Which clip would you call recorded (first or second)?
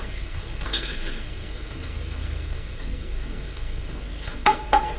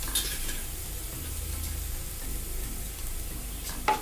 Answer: second